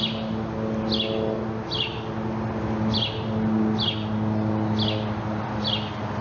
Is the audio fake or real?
real